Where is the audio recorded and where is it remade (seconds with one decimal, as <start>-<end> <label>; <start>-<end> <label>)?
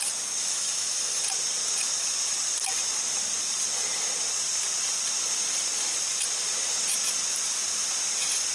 0.0-0.4 recorded; 0.4-1.2 remade; 1.2-8.5 recorded